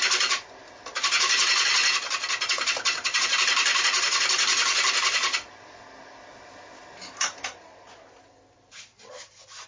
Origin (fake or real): real